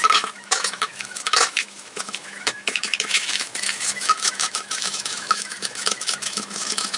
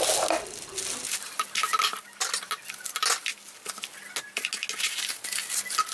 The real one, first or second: second